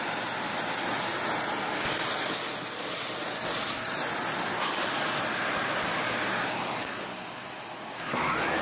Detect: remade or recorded recorded